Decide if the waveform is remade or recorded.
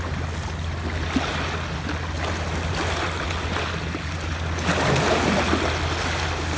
recorded